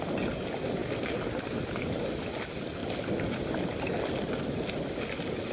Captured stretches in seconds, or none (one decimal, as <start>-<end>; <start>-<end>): 0.0-5.5